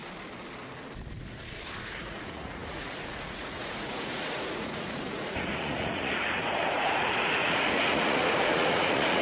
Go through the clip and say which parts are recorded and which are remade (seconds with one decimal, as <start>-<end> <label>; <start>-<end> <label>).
0.0-1.8 recorded; 1.8-9.2 remade